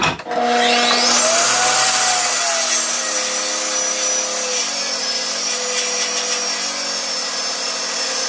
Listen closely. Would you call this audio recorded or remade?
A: recorded